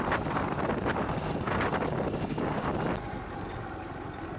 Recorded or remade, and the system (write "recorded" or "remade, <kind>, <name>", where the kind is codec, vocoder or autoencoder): recorded